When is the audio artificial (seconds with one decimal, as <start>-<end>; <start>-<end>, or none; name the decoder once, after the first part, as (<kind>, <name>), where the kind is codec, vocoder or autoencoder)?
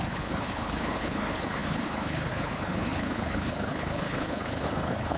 0.0-5.2 (codec, HILCodec)